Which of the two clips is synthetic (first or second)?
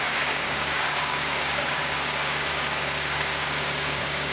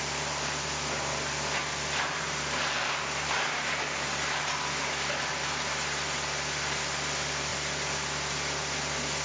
first